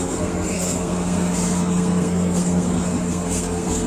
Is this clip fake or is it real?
fake